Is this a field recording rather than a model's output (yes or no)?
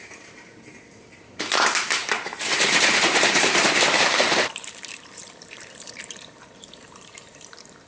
no